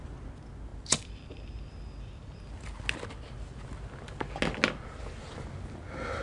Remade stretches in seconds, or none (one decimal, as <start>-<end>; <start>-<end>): none